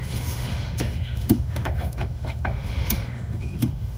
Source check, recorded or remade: remade